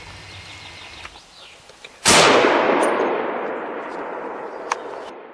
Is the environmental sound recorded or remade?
recorded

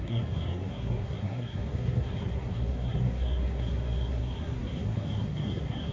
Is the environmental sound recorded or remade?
remade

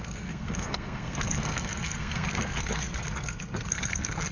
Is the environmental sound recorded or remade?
remade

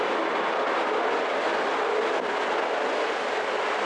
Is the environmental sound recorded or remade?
recorded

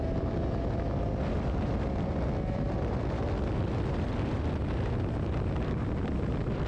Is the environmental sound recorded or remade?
recorded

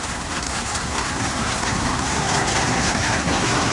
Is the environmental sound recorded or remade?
remade